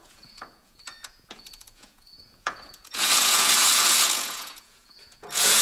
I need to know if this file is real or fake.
fake